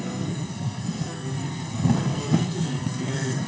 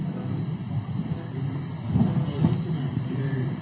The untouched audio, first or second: second